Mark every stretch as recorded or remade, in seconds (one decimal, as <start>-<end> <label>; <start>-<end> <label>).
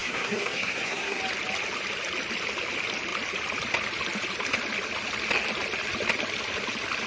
0.0-1.2 remade; 1.2-7.1 recorded